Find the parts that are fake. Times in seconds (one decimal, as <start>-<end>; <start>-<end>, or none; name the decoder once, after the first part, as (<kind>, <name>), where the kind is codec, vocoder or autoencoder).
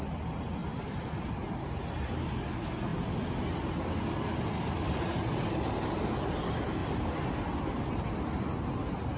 none